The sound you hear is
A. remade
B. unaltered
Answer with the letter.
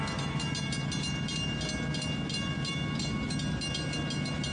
B